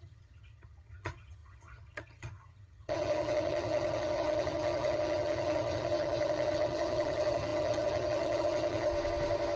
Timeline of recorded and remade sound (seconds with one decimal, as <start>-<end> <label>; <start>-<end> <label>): 0.0-8.9 remade; 8.9-9.6 recorded